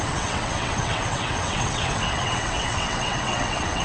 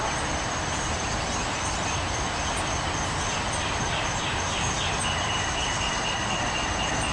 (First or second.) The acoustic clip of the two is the second